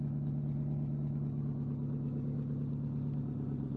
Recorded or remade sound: recorded